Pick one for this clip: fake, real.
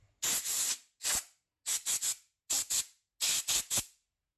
real